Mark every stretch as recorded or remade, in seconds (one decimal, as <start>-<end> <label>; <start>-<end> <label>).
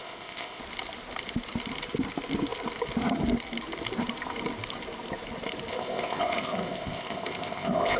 0.0-0.6 remade; 0.6-5.7 recorded; 5.7-8.0 remade